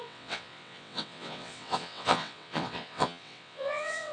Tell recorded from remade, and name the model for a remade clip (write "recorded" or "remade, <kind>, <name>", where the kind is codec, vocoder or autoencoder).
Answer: remade, vocoder, WaveNeXt